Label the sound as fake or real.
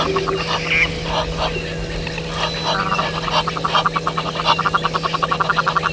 real